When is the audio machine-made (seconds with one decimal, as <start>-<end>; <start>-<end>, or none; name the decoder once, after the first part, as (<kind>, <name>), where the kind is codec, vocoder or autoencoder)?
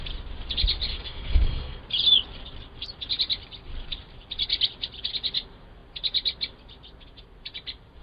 0.9-1.8 (codec, SNAC)